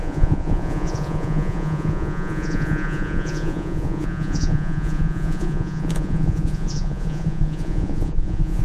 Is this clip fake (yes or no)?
yes